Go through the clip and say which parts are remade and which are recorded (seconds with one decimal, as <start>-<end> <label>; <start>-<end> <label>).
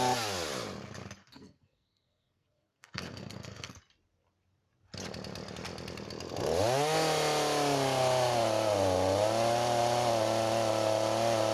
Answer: 0.0-1.2 recorded; 1.2-3.8 remade; 3.8-11.5 recorded